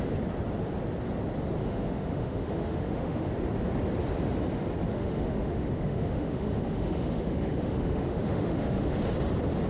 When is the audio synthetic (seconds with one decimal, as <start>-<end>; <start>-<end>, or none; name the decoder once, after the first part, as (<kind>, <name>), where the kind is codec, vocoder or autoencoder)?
1.6-3.3 (autoencoder, DAC-VAE); 4.9-9.0